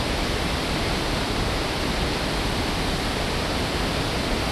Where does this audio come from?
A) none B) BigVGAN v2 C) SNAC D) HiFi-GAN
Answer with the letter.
B